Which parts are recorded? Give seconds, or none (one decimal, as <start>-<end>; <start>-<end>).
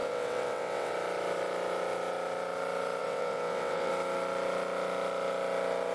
0.9-3.0; 3.9-5.9